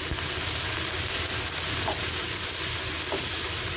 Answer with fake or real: real